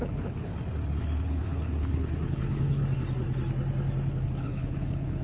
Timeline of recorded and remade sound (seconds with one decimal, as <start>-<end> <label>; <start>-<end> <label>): 0.0-0.5 remade; 0.5-1.0 recorded; 1.0-2.8 remade; 2.8-4.2 recorded; 4.2-5.2 remade